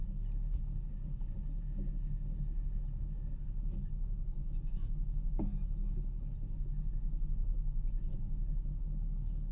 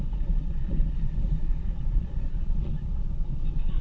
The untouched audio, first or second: first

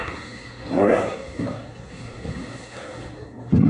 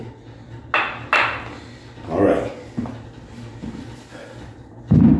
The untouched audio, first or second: second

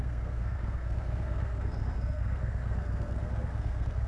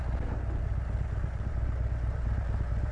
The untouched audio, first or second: second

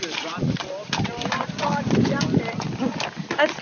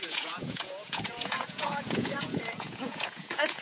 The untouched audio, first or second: first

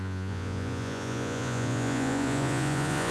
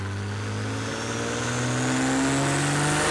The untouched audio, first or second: second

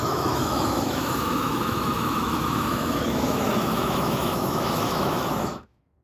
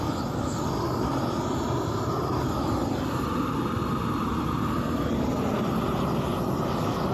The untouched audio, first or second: second